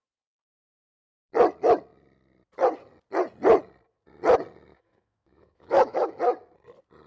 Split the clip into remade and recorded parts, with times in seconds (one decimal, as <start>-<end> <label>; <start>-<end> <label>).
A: 0.0-4.7 recorded; 4.7-6.1 remade; 6.1-7.1 recorded